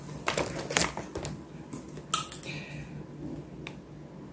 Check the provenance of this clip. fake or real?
real